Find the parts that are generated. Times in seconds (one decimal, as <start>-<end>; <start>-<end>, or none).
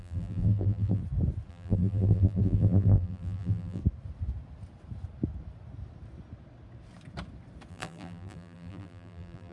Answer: 0.0-1.0; 1.5-3.8; 7.7-9.5